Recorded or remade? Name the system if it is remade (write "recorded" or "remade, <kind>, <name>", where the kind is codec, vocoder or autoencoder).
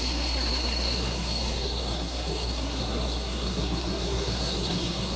remade, codec, SNAC